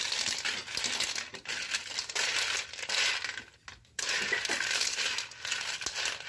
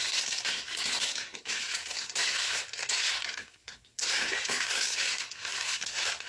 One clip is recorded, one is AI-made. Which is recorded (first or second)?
first